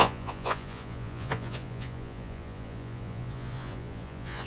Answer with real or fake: fake